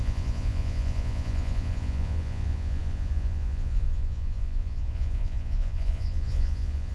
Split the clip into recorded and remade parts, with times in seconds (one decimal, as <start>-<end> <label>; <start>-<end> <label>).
0.0-6.9 remade